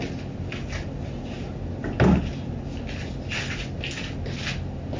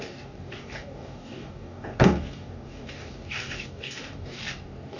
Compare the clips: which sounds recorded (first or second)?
first